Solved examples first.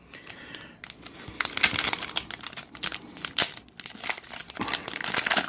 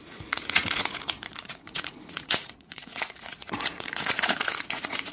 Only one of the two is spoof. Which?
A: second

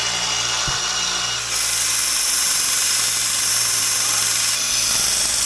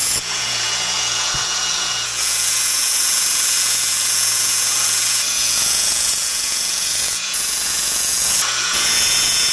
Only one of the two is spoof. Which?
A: second